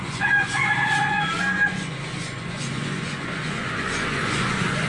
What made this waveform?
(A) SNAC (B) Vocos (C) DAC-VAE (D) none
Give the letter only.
B